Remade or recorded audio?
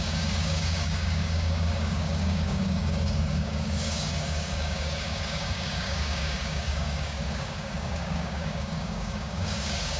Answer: remade